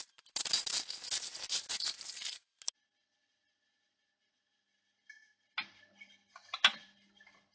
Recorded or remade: recorded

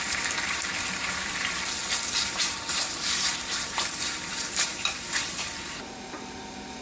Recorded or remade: remade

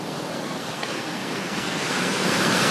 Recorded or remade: remade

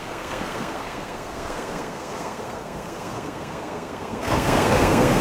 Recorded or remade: remade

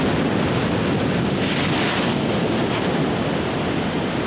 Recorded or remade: recorded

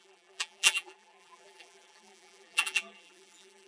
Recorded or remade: remade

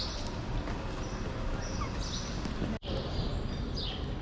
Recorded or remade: recorded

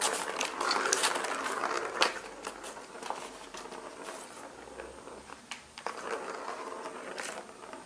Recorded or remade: recorded